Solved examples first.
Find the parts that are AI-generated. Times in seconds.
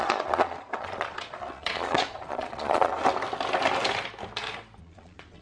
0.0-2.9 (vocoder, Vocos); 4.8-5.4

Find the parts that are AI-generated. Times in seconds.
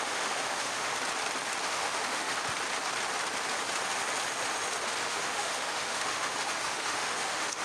0.0-0.9 (autoencoder, DAC-VAE); 1.7-2.3; 5.0-7.6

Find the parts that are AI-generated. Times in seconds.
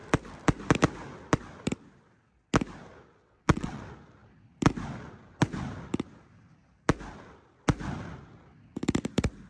3.2-3.8 (vocoder, WaveNeXt)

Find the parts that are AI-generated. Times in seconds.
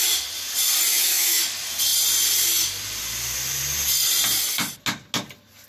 0.9-1.4 (autoencoder, DAC-VAE)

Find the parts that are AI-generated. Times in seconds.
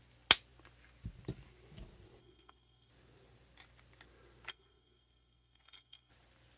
2.2-2.9 (codec, SNAC); 4.5-6.1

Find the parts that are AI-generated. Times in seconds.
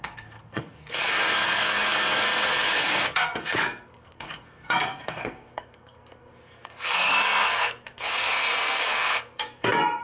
0.0-10.0 (codec, SNAC)